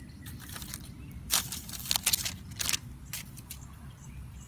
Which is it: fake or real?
real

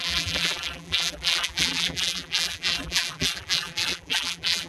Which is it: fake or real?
fake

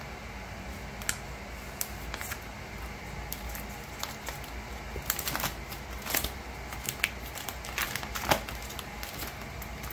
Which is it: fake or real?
real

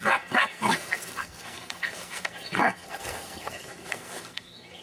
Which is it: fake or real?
fake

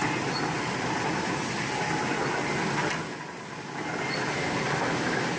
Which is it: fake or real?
real